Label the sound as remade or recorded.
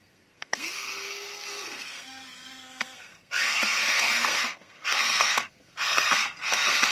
remade